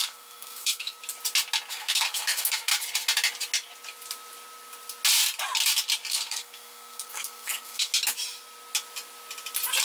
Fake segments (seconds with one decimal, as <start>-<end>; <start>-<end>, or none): 0.0-1.0; 1.7-2.7; 6.1-7.9